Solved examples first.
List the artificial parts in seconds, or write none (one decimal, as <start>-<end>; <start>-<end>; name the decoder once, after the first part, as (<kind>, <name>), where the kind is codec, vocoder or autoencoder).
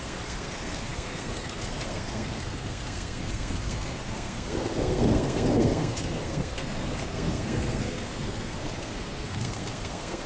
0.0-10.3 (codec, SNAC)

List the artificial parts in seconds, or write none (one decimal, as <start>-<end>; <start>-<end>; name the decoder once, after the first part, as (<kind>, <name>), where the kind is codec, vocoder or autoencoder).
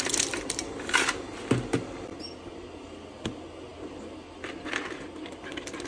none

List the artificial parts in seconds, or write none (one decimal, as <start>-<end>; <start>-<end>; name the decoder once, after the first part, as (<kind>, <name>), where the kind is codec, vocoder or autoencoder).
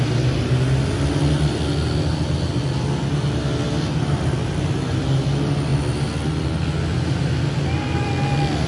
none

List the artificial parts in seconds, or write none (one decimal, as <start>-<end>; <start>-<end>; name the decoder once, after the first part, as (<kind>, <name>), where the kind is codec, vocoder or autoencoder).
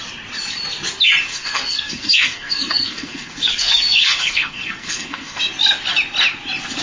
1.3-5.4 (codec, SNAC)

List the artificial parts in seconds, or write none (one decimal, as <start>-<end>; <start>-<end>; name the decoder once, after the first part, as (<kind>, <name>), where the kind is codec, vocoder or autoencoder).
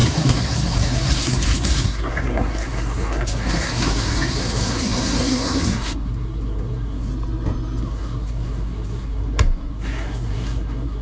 0.0-7.1 (codec, SNAC); 7.8-11.0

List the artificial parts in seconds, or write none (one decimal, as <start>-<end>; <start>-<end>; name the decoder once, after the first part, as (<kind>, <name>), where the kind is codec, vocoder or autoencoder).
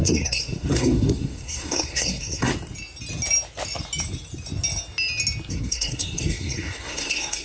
0.0-2.5 (codec, SNAC); 5.5-7.4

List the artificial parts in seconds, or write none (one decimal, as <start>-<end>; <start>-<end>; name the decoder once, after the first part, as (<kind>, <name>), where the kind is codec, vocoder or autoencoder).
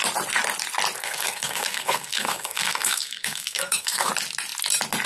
1.0-4.1 (codec, SNAC)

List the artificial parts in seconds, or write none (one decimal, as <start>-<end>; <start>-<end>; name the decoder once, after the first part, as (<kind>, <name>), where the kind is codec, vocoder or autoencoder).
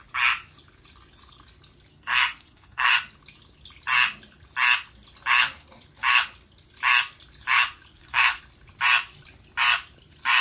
1.9-2.9 (codec, SNAC); 7.9-8.4